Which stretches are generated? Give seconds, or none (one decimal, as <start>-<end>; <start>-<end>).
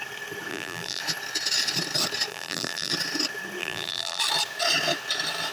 0.5-1.0; 2.3-2.9; 3.6-4.2